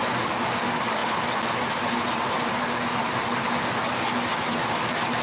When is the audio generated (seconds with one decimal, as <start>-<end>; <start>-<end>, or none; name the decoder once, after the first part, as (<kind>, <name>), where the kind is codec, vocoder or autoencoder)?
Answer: none